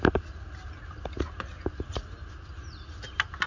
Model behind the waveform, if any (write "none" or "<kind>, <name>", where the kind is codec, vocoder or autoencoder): none